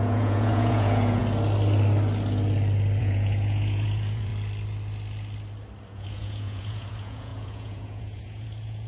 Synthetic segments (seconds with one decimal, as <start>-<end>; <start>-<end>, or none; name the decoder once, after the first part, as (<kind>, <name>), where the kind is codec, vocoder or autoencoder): 0.0-1.2 (vocoder, Vocos); 3.0-4.3; 5.9-8.9